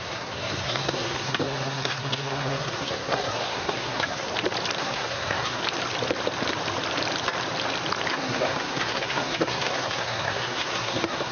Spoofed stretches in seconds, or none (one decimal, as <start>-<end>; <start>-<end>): 0.0-4.3; 4.8-5.6; 8.1-11.3